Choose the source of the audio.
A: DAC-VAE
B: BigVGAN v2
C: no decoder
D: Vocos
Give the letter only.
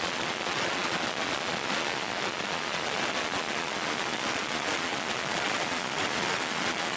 D